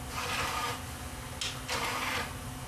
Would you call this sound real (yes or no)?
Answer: yes